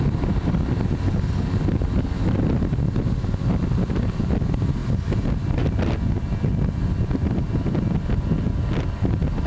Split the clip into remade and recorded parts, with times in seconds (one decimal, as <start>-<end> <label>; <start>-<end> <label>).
0.0-9.5 recorded